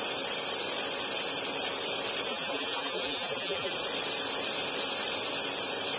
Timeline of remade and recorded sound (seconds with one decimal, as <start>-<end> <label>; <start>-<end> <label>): 0.0-2.3 recorded; 2.3-3.7 remade; 3.7-6.0 recorded